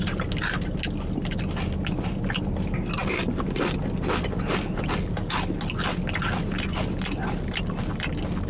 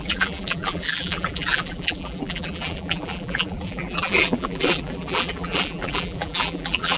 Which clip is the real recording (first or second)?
first